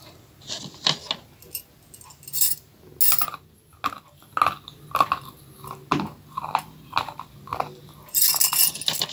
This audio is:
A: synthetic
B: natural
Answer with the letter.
B